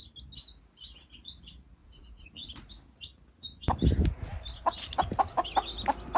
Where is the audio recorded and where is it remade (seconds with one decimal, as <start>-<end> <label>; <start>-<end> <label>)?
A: 0.0-1.8 recorded; 1.8-2.7 remade; 2.7-6.2 recorded